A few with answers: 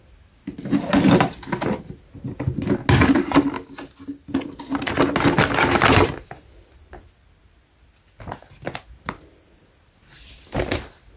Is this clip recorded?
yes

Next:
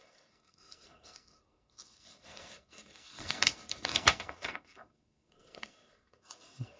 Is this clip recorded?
no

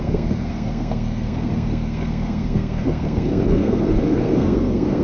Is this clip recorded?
no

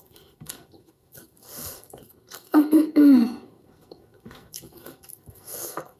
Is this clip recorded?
no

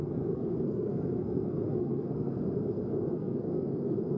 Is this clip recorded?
no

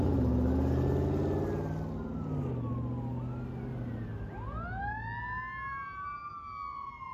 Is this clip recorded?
yes